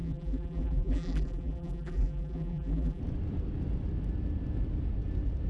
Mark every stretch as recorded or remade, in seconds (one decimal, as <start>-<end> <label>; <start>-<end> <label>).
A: 0.0-3.0 remade; 3.0-5.5 recorded